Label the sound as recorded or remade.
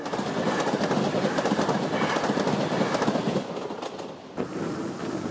recorded